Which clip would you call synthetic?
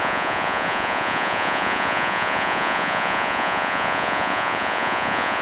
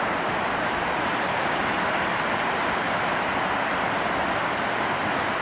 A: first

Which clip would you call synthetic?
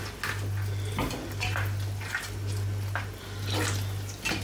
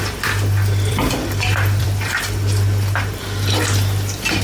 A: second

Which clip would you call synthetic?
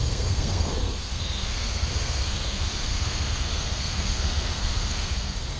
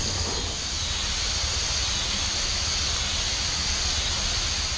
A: first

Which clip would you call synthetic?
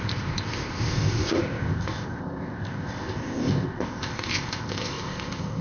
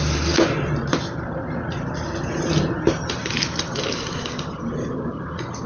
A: first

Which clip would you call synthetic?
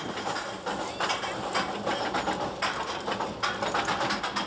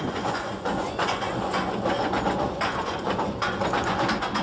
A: second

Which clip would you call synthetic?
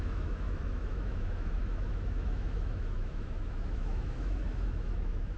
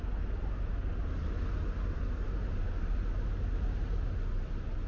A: first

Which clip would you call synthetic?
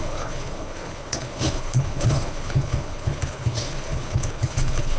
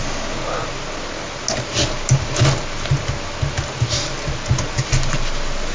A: first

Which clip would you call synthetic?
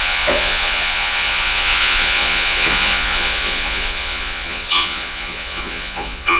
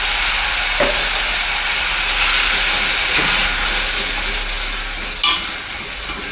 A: first